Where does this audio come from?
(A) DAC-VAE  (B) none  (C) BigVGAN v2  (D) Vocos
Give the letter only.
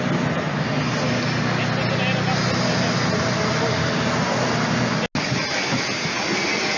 B